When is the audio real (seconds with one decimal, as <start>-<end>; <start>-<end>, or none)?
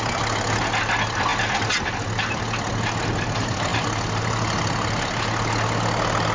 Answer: 0.0-6.3